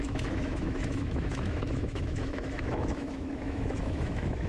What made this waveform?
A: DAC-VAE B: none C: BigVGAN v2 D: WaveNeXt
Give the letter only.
A